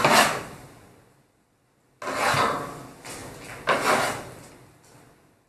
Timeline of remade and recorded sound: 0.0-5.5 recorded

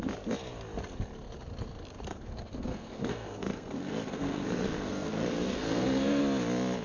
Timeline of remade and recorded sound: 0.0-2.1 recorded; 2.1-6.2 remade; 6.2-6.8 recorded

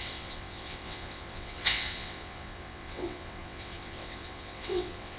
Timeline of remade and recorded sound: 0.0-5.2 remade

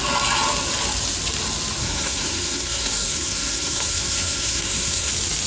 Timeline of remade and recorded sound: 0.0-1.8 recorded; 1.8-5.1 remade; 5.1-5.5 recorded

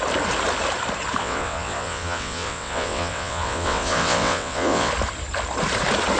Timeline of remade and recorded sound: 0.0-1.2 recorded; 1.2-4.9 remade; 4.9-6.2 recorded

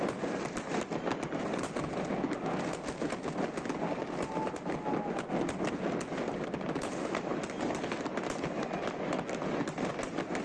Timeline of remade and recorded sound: 0.0-10.4 recorded